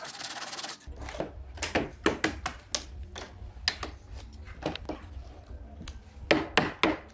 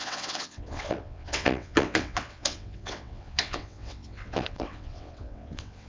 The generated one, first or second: second